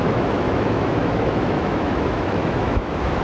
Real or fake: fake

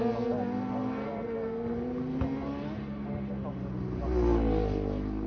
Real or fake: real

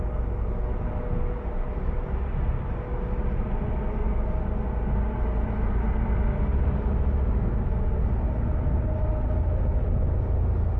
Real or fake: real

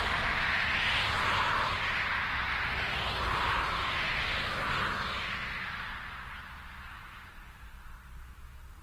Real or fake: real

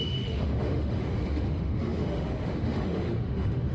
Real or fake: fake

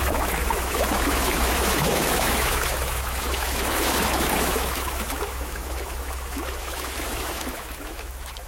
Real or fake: fake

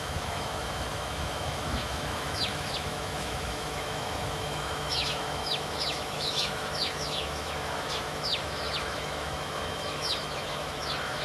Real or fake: fake